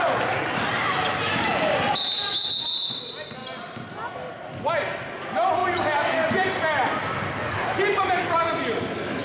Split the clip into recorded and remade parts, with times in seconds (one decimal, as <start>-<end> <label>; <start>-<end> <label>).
0.0-9.2 recorded